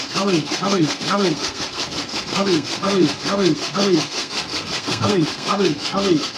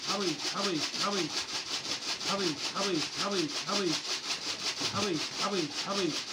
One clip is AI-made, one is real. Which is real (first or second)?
second